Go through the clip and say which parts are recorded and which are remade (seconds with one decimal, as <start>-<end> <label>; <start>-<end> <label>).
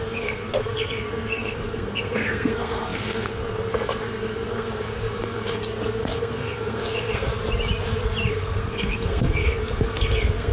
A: 0.0-7.3 remade; 7.3-8.3 recorded; 8.3-10.5 remade